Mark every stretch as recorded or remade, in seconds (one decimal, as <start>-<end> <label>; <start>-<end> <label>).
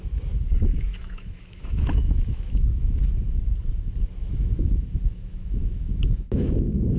0.0-0.7 recorded; 0.7-3.0 remade; 3.0-4.2 recorded; 4.2-7.0 remade